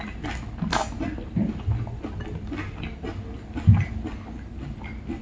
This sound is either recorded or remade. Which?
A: recorded